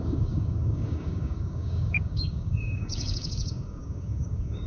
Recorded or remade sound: remade